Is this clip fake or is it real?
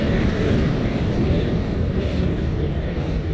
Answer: fake